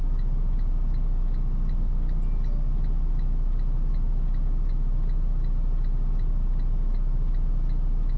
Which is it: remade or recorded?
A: recorded